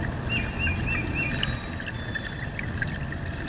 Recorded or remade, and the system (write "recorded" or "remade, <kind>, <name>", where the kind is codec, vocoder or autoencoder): recorded